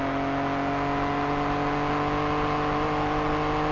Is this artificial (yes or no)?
no